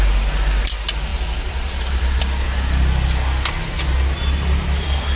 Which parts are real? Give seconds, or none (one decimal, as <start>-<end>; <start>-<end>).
0.0-1.1; 2.2-5.2